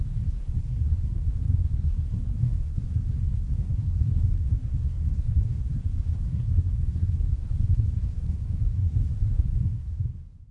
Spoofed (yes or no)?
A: yes